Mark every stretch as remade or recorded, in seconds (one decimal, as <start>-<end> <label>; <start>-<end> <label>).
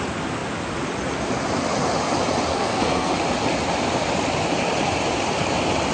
0.0-2.5 recorded; 2.5-3.1 remade; 3.1-5.9 recorded